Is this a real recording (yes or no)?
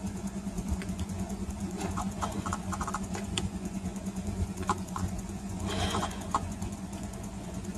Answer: no